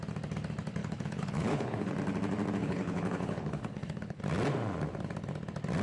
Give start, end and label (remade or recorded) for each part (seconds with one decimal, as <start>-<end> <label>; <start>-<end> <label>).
0.0-0.8 recorded; 0.8-1.9 remade; 1.9-2.6 recorded; 2.6-4.2 remade; 4.2-5.8 recorded